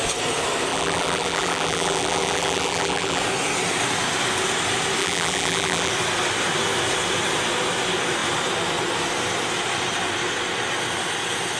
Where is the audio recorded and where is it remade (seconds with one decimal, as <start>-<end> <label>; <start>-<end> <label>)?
0.0-0.7 recorded; 0.7-3.2 remade; 3.2-5.0 recorded; 5.0-5.9 remade; 5.9-11.6 recorded